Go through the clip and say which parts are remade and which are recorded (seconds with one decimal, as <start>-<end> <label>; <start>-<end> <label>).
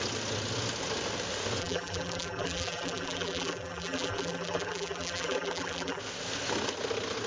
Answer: 0.0-1.6 recorded; 1.6-6.0 remade; 6.0-7.3 recorded